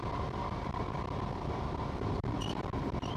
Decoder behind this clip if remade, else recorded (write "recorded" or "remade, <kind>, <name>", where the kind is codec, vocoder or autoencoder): remade, vocoder, BigVGAN v2